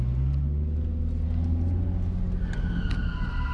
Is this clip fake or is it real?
real